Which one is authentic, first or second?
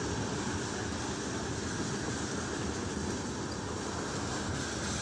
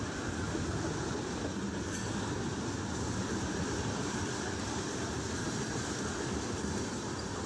first